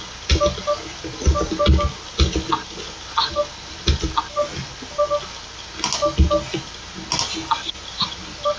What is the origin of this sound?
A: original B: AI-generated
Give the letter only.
A